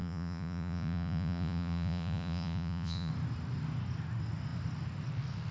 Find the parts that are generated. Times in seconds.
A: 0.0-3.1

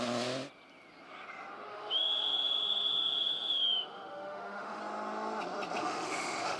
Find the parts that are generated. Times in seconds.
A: 1.7-4.8; 5.8-6.6

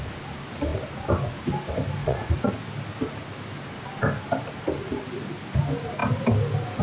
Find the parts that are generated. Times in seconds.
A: 2.0-2.5

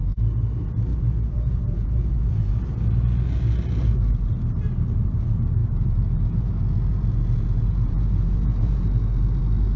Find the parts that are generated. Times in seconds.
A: 0.9-2.5; 5.6-6.5; 6.9-9.4

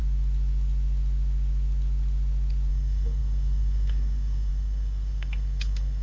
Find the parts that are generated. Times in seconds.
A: 2.7-6.0

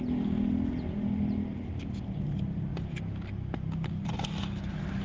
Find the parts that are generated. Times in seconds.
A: none

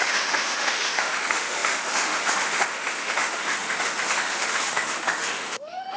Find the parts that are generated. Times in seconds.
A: 0.0-6.0